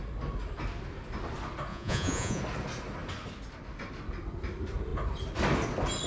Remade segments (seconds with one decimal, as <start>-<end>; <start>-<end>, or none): 1.7-2.4